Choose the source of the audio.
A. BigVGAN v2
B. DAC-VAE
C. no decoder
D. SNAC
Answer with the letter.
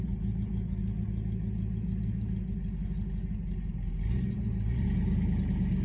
C